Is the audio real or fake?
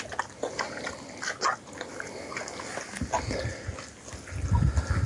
real